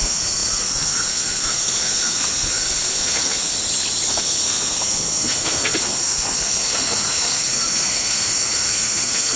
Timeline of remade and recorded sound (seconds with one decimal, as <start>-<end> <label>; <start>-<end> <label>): 0.0-3.5 remade; 3.5-4.1 recorded; 4.1-9.4 remade